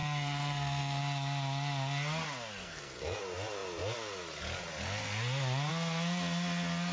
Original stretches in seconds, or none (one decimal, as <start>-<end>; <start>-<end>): 1.0-2.6; 3.2-6.9